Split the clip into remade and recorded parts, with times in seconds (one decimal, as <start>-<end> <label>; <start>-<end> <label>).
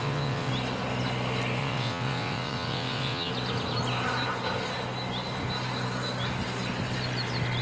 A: 0.0-0.5 remade; 0.5-1.6 recorded; 1.6-3.3 remade; 3.3-7.6 recorded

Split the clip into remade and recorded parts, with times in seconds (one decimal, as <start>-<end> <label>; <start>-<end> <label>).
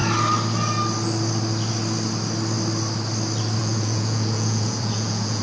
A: 0.0-3.6 recorded; 3.6-5.4 remade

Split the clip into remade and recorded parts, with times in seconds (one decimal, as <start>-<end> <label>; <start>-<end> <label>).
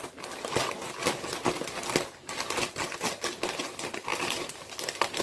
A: 0.0-5.2 recorded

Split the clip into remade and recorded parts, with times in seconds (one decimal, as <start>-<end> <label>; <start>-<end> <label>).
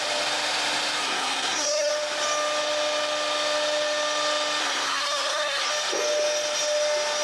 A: 0.0-1.0 recorded; 1.0-1.9 remade; 1.9-4.6 recorded; 4.6-5.7 remade; 5.7-7.2 recorded